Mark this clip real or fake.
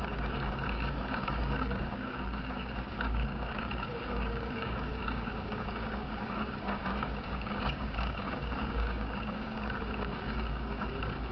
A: fake